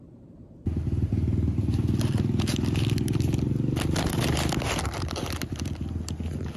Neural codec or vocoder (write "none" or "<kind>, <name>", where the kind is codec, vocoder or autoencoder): none